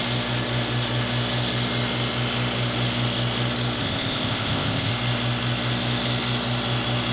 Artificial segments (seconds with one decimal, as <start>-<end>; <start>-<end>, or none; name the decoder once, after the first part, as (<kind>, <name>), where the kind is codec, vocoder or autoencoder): 3.8-4.9 (codec, ZipCodec)